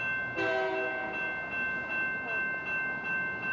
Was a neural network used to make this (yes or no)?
no